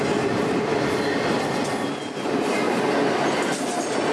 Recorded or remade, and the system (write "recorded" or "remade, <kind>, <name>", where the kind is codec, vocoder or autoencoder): recorded